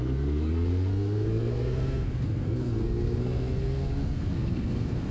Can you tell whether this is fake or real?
fake